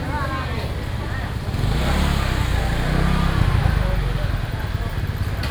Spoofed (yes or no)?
no